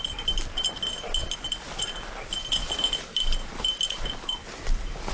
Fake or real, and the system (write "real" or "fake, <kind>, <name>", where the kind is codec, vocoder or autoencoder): real